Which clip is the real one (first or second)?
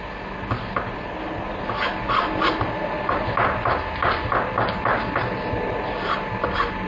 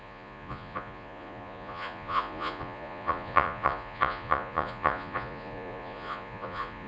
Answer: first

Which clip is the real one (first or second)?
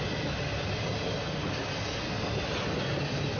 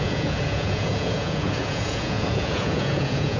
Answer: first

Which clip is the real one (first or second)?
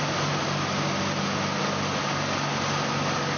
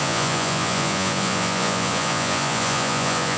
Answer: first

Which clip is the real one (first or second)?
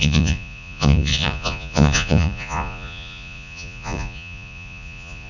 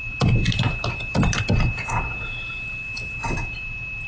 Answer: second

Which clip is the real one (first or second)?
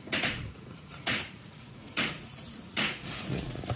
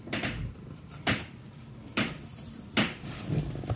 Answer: second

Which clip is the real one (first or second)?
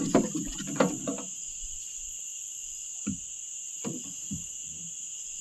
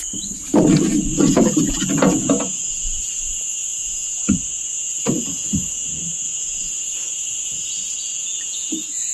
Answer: first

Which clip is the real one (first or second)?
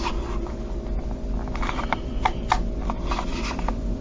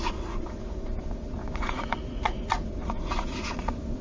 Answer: first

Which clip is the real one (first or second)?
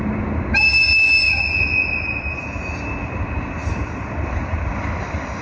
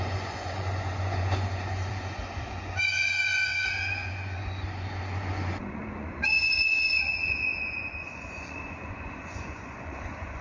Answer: first